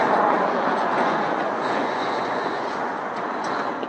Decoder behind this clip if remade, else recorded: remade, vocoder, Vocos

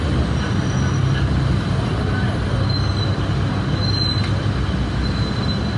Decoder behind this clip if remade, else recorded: recorded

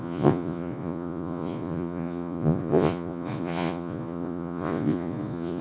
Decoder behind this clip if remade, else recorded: remade, vocoder, Vocos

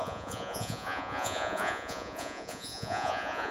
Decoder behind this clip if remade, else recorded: remade, vocoder, Vocos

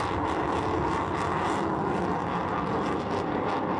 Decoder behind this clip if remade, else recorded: recorded